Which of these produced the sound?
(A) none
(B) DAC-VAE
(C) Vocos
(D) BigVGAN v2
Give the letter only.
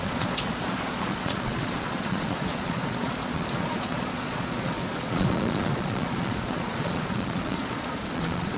C